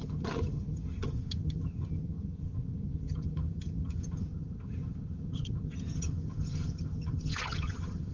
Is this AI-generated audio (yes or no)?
yes